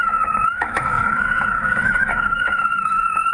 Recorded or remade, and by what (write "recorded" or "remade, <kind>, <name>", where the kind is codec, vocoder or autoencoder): remade, autoencoder, DAC-VAE